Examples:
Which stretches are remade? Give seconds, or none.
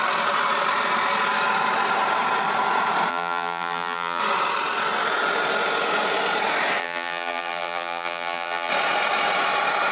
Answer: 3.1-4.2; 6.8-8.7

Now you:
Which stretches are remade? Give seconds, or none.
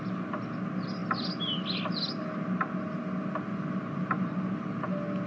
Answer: none